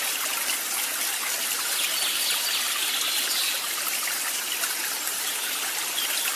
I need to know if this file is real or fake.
real